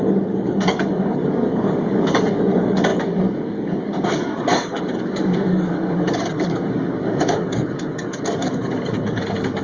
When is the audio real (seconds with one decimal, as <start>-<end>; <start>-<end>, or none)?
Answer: none